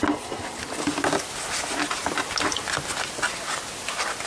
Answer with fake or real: real